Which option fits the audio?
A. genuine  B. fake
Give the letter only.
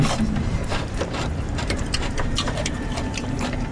B